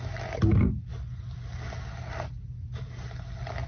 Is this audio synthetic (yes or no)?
no